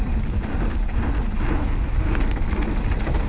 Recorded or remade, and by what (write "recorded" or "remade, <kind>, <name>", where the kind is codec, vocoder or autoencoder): recorded